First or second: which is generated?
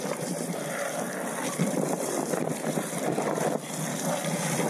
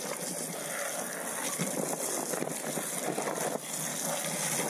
first